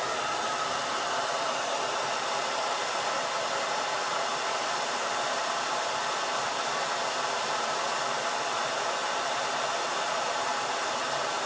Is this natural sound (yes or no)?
yes